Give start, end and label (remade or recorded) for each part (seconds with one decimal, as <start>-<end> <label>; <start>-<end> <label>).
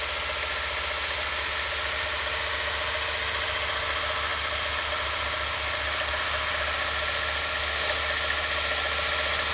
0.0-9.5 recorded